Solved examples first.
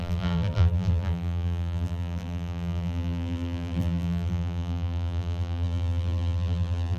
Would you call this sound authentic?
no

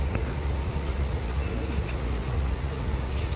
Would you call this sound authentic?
no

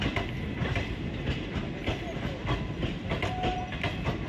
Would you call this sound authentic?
yes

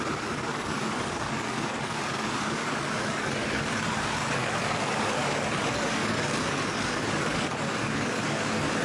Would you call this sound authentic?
no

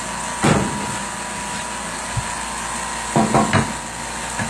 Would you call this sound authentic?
yes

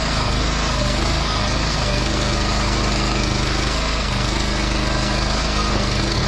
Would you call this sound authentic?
no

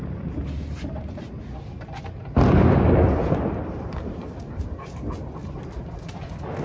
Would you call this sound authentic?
yes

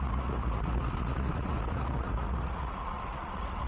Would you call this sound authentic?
no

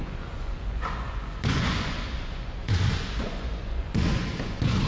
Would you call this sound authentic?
no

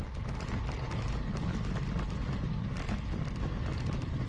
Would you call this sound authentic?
yes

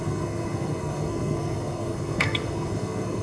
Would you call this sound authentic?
no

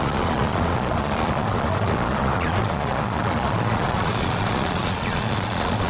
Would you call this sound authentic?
no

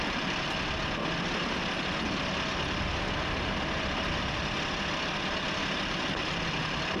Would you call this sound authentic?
yes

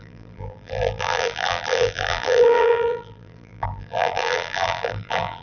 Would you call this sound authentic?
no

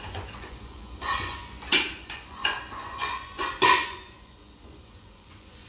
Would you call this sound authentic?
no